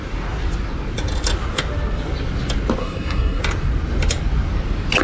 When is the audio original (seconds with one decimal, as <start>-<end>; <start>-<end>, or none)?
0.0-2.8; 3.4-5.0